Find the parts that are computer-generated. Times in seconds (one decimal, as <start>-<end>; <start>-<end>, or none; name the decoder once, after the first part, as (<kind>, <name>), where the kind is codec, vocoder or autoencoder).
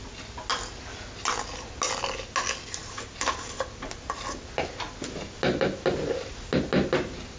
none